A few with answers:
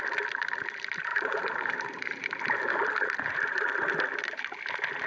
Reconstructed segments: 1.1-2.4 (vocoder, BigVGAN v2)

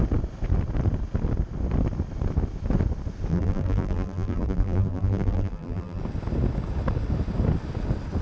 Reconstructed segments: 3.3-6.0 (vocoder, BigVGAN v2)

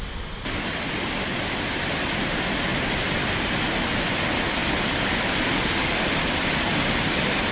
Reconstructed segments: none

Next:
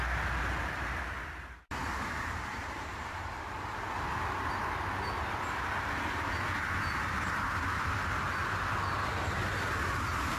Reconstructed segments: 1.8-3.9 (vocoder, BigVGAN v2)

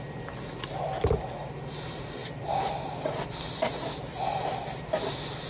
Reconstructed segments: 2.2-3.3 (vocoder, BigVGAN v2)

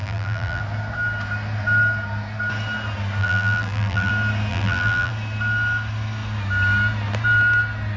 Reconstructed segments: 0.0-0.6 (vocoder, BigVGAN v2); 3.2-4.1; 4.5-5.1